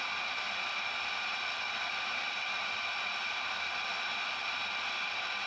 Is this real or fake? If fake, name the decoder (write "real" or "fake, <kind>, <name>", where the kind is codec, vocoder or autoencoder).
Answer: real